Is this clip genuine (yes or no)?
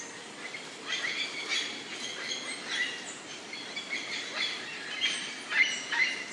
yes